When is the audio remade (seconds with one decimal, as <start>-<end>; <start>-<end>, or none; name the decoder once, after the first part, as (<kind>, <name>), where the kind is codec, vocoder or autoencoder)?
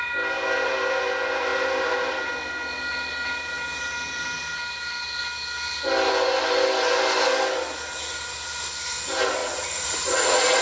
9.4-10.6 (vocoder, Vocos)